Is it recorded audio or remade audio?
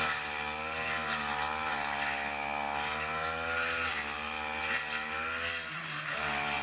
recorded